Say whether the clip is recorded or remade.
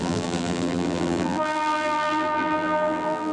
remade